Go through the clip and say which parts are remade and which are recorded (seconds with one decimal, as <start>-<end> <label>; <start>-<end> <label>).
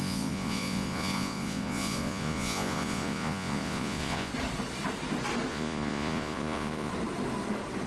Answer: 0.0-4.3 remade; 4.3-5.5 recorded; 5.5-6.9 remade; 6.9-7.9 recorded